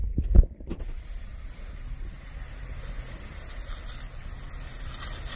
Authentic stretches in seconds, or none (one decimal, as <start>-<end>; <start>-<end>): 0.0-5.4